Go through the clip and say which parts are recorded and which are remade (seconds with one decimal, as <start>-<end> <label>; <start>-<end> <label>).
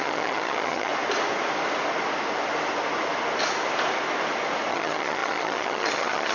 0.0-0.9 remade; 0.9-4.7 recorded; 4.7-6.3 remade